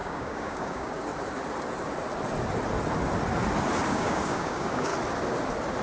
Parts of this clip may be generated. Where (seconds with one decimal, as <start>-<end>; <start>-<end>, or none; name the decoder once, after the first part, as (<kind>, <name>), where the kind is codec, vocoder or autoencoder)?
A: 0.0-1.1 (codec, DAC); 3.9-4.9